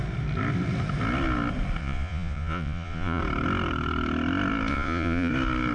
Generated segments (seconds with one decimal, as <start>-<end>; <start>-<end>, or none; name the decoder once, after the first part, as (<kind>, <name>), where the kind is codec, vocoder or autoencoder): 1.8-3.2 (vocoder, Vocos); 4.7-5.3